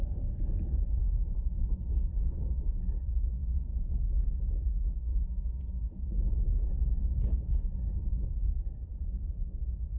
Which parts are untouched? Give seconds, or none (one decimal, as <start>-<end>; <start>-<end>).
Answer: 1.2-3.4; 4.4-5.1; 7.2-8.9